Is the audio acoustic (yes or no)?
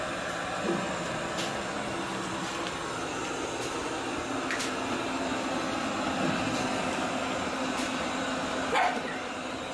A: yes